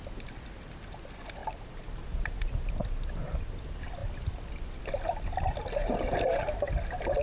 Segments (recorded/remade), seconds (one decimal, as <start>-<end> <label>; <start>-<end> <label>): 0.0-1.4 recorded; 1.4-3.6 remade; 3.6-5.8 recorded; 5.8-6.7 remade; 6.7-7.2 recorded